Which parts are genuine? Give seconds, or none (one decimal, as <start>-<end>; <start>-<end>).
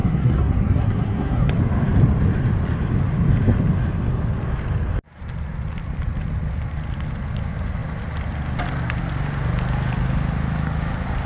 1.5-11.3